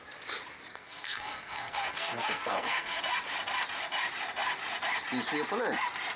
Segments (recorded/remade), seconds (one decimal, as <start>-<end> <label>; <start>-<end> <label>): 0.0-0.7 recorded; 0.7-3.0 remade; 3.0-6.2 recorded